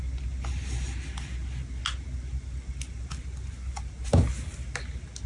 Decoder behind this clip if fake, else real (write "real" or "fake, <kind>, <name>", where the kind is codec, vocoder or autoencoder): real